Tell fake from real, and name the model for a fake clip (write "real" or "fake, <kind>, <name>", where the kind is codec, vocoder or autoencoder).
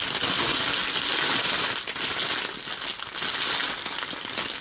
real